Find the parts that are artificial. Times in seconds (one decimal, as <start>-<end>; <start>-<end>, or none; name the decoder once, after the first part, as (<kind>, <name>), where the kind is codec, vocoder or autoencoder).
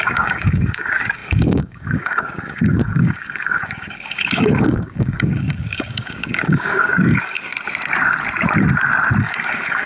0.0-7.5 (codec, DAC); 9.2-9.9